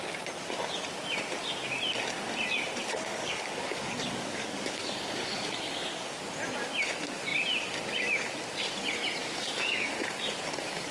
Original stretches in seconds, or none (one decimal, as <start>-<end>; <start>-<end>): 0.0-2.8; 6.2-9.2; 9.9-10.9

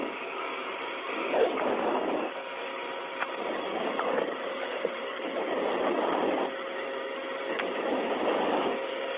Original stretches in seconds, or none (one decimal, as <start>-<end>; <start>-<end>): 2.7-3.6; 5.7-7.4

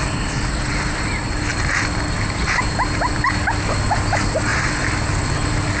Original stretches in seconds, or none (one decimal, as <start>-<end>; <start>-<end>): 0.0-5.8